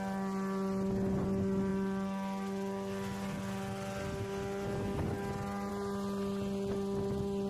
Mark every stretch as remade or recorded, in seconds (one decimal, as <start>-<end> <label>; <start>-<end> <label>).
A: 0.0-7.5 recorded